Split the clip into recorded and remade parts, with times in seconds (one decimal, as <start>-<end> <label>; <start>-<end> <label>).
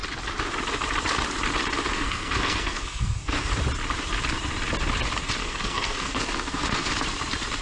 0.0-1.9 recorded; 1.9-3.5 remade; 3.5-5.4 recorded; 5.4-6.9 remade; 6.9-7.6 recorded